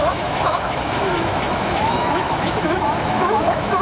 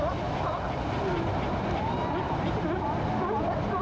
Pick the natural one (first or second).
second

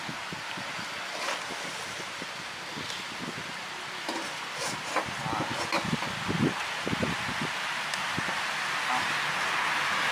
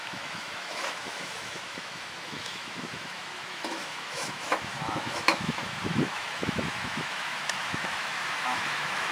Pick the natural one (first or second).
first